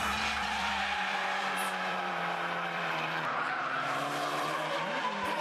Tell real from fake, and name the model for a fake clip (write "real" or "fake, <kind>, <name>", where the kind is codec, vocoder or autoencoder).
fake, vocoder, BigVGAN v2